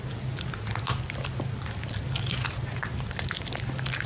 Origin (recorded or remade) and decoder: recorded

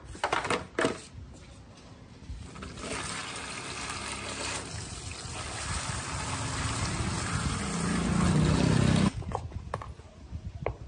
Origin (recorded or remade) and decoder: recorded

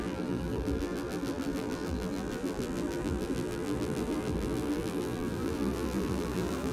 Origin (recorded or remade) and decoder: remade, vocoder, BigVGAN v2